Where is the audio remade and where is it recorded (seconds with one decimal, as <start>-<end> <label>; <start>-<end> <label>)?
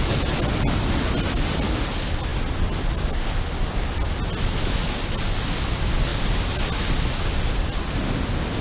0.0-8.6 recorded